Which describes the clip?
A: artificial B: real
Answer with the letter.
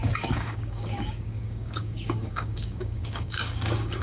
A